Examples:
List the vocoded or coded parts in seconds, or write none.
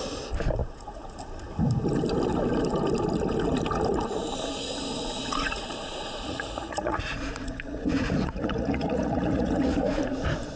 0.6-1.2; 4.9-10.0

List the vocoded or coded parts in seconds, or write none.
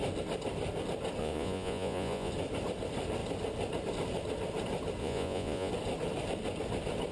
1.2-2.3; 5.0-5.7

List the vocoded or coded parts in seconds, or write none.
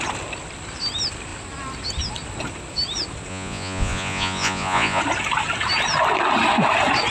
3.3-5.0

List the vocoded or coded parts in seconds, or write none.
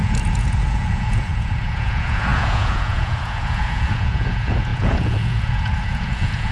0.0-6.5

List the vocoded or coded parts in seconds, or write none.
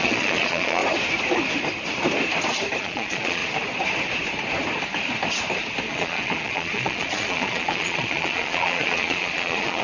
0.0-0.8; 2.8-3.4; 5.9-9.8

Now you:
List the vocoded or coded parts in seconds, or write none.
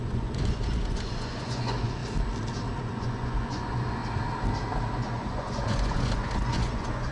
0.0-2.0; 2.8-4.0; 4.9-7.1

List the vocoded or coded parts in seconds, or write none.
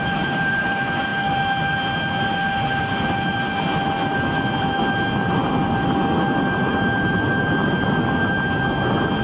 none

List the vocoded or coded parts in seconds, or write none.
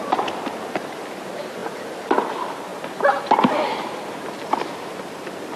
none